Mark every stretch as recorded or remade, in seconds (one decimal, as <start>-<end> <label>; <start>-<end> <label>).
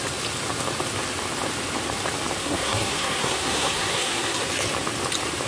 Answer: 0.0-2.4 recorded; 2.4-4.5 remade; 4.5-5.5 recorded